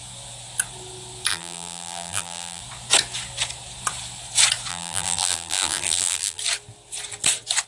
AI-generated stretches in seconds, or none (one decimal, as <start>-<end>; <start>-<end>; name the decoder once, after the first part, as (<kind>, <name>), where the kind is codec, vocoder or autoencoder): 1.3-2.6 (vocoder, BigVGAN v2); 4.7-6.4